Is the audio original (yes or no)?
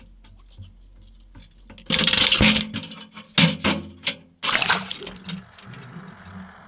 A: yes